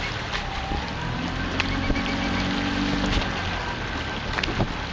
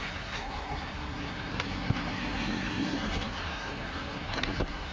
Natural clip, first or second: first